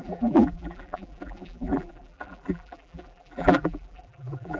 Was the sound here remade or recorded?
remade